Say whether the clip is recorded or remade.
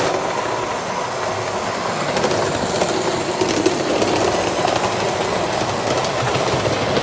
recorded